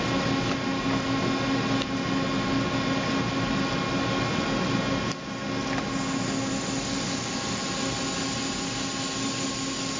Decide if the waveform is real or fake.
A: real